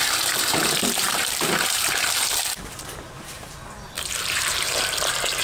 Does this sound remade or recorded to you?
remade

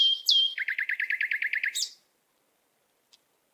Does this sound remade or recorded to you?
recorded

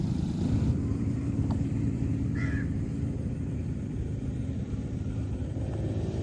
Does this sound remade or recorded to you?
remade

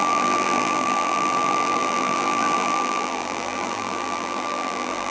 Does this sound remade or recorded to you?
remade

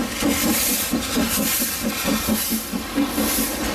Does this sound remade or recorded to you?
recorded